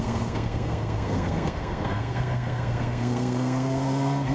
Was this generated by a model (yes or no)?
yes